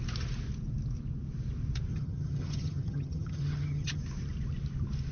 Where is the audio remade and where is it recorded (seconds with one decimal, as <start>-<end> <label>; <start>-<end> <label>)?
0.0-1.9 recorded; 1.9-4.0 remade; 4.0-5.1 recorded